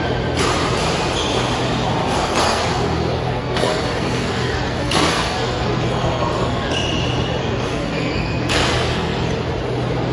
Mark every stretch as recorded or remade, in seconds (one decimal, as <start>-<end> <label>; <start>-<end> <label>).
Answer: 0.0-2.0 recorded; 2.0-6.7 remade; 6.7-7.4 recorded; 7.4-9.3 remade; 9.3-10.1 recorded

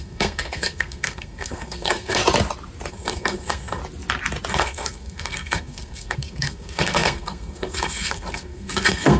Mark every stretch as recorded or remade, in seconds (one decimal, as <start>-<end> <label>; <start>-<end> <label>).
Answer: 0.0-2.2 remade; 2.2-2.9 recorded; 2.9-3.8 remade; 3.8-4.5 recorded; 4.5-9.2 remade